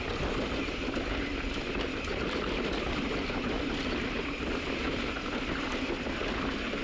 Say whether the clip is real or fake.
real